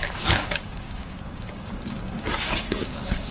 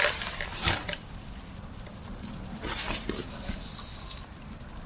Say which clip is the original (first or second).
second